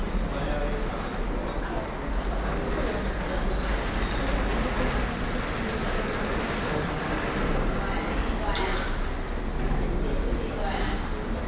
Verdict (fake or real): real